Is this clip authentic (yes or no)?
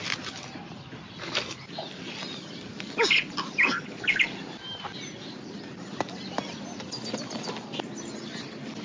yes